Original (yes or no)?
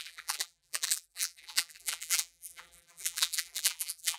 no